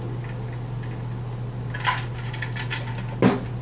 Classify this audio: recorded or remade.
recorded